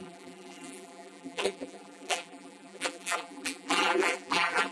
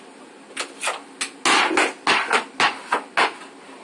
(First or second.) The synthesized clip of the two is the first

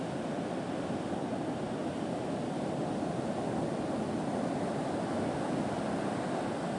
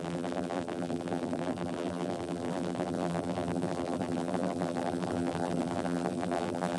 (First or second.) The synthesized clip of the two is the second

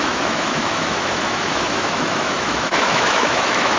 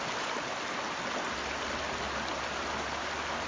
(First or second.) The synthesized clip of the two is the first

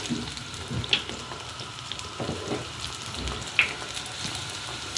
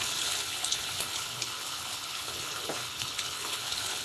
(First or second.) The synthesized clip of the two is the second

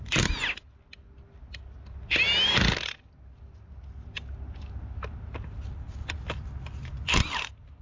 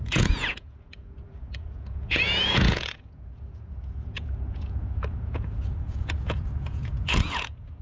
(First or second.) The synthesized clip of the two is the second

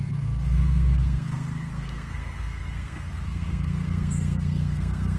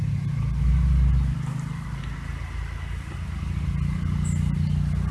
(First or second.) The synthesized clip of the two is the first